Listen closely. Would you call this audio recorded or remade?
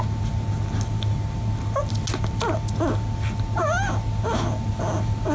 recorded